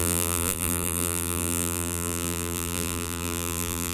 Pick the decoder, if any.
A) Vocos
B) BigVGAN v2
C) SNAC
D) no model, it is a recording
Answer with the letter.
B